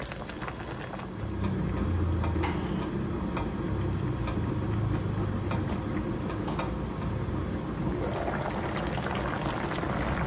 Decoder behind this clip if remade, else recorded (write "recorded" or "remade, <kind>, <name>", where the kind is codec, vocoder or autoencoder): recorded